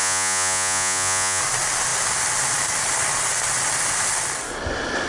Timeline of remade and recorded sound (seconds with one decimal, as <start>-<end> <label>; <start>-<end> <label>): 0.0-1.4 remade; 1.4-5.1 recorded